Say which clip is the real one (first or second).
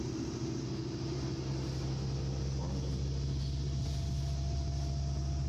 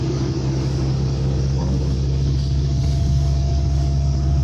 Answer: first